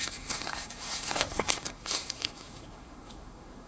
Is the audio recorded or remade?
remade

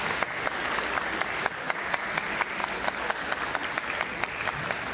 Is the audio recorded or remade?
recorded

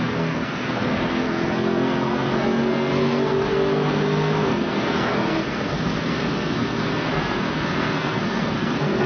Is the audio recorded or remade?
remade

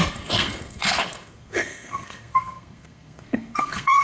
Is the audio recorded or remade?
remade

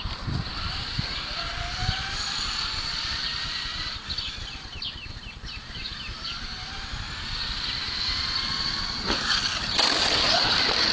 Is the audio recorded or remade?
recorded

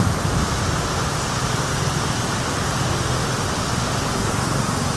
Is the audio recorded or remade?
recorded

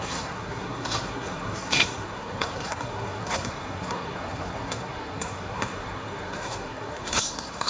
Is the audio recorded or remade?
remade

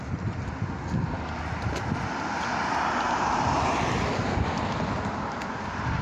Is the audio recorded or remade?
recorded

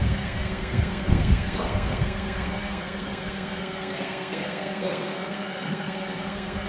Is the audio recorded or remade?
remade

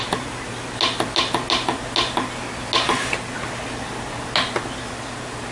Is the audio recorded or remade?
recorded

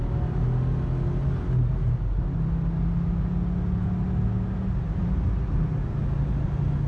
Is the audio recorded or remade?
recorded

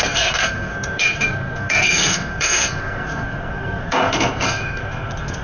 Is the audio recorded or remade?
remade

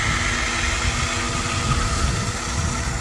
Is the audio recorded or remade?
recorded